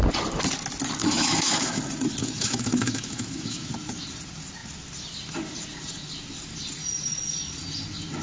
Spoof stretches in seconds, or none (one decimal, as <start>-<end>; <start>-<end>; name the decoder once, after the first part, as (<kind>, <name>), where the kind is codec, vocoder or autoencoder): 1.0-1.8 (autoencoder, DAC-VAE); 2.2-3.7